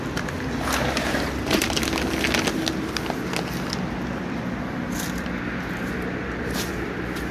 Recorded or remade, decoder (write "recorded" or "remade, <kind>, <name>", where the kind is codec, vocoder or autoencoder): recorded